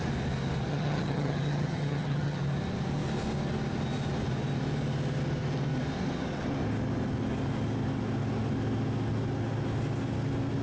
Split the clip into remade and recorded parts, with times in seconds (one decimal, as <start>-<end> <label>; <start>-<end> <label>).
0.0-0.7 recorded; 0.7-2.4 remade; 2.4-10.6 recorded